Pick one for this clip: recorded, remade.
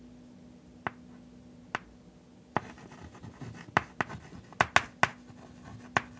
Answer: recorded